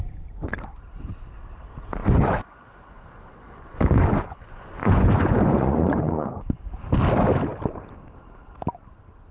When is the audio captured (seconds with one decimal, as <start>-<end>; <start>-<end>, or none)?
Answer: 0.0-2.0; 6.5-9.3